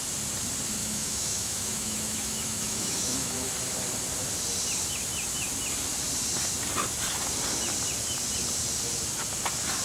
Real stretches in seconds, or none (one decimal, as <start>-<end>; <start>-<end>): 0.0-0.8; 3.5-9.8